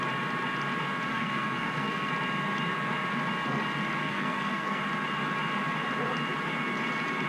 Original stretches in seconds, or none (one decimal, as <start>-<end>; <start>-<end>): 0.0-1.1; 2.1-4.0; 4.8-7.3